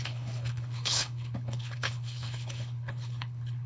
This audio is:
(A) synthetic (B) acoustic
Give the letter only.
A